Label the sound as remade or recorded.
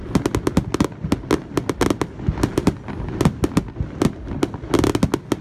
recorded